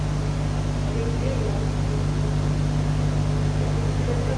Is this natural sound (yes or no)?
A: yes